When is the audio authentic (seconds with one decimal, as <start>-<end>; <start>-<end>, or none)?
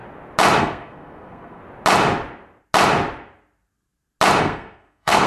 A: 0.0-0.6; 1.6-4.4